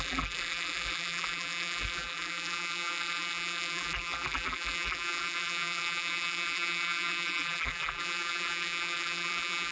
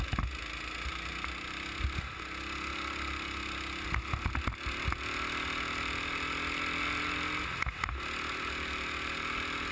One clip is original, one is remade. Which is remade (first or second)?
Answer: first